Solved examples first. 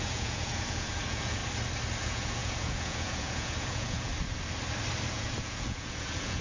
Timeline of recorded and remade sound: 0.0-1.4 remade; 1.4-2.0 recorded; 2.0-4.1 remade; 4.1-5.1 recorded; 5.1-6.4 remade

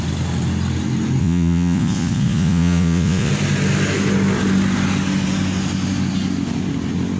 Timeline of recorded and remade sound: 0.0-1.2 recorded; 1.2-3.3 remade; 3.3-7.2 recorded